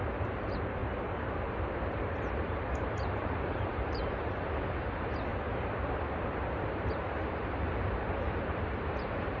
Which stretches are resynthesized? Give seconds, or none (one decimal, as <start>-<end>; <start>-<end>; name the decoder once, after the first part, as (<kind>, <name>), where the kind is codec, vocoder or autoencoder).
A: 0.0-0.8 (vocoder, BigVGAN v2); 1.5-5.3; 6.5-9.4